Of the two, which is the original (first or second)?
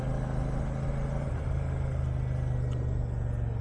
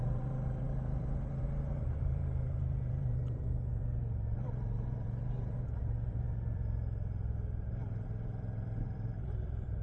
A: first